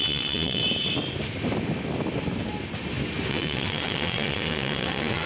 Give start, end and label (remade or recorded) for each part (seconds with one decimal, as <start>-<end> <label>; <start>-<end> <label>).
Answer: 0.0-0.6 remade; 0.6-3.3 recorded; 3.3-5.3 remade